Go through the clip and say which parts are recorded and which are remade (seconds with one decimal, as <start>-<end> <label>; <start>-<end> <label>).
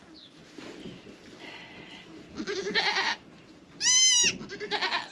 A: 0.0-5.1 recorded